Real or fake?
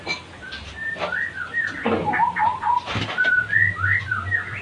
real